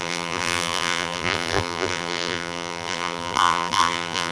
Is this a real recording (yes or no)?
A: no